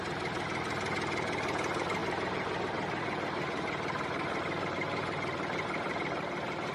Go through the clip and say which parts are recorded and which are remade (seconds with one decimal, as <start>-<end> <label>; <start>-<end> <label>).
0.0-6.7 remade